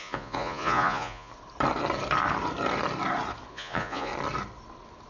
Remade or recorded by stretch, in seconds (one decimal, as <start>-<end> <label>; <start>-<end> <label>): 0.0-1.3 remade; 1.3-3.5 recorded; 3.5-4.1 remade; 4.1-5.1 recorded